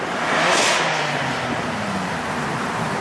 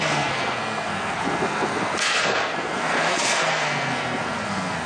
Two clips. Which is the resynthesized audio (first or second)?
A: second